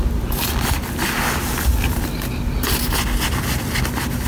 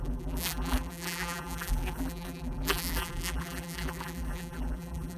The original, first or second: first